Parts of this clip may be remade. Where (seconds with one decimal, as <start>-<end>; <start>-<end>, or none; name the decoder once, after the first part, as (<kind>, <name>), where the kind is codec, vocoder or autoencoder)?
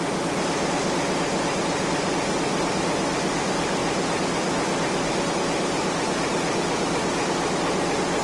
none